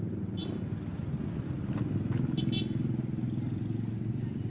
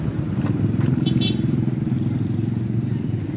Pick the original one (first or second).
first